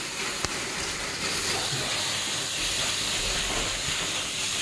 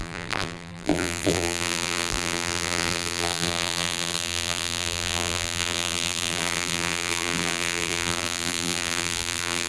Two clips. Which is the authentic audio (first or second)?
first